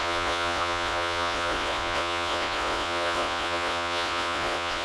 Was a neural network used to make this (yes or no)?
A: yes